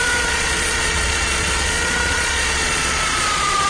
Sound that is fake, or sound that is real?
fake